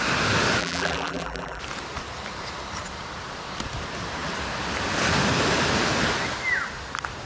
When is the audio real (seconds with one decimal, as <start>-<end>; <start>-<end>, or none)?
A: 0.0-0.6; 1.6-7.3